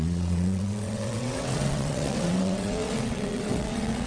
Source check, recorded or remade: remade